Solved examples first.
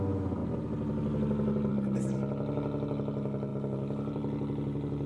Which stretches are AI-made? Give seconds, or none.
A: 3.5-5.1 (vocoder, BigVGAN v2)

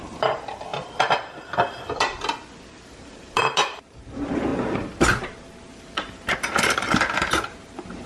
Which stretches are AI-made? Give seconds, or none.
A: 0.0-0.7 (vocoder, BigVGAN v2); 2.9-4.5; 5.7-8.1